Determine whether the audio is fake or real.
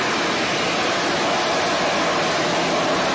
real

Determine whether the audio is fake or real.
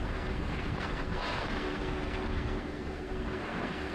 fake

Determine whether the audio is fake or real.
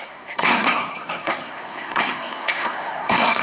fake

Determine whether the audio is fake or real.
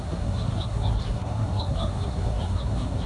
fake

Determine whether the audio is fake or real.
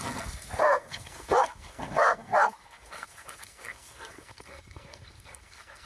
fake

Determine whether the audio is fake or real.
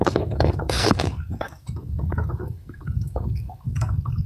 fake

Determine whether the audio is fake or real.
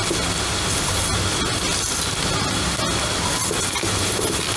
real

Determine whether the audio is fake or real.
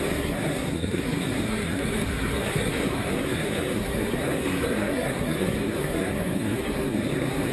fake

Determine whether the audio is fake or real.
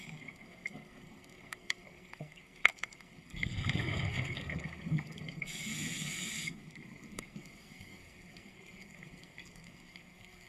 fake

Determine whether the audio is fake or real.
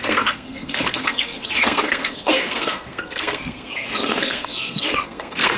fake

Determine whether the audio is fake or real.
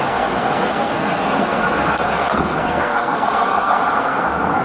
fake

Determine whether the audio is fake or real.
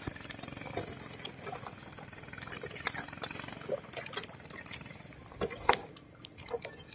real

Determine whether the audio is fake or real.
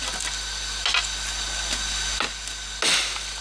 real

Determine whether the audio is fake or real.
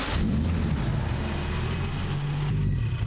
real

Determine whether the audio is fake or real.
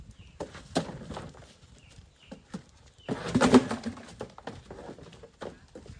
real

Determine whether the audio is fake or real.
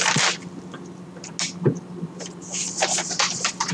real